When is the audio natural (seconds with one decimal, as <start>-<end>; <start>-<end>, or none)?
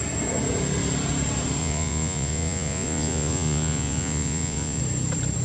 0.0-1.6; 4.8-5.4